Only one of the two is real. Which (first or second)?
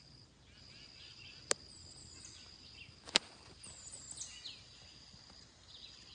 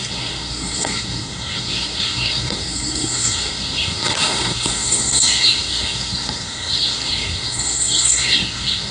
first